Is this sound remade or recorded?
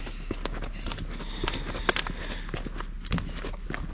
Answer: recorded